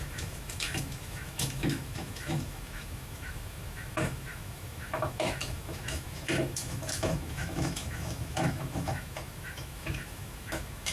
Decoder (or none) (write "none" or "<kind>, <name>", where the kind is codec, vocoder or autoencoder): autoencoder, DAC-VAE